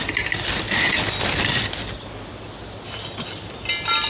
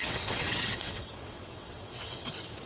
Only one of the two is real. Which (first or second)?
first